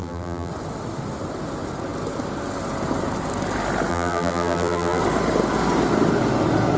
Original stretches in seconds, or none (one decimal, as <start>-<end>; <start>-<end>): 0.5-3.9; 5.0-6.8